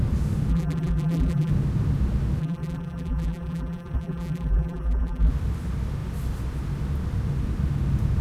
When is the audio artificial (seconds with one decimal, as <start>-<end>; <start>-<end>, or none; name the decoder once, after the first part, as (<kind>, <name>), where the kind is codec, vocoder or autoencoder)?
0.5-1.5 (vocoder, BigVGAN v2); 2.4-5.3